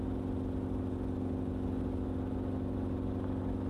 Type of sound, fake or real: real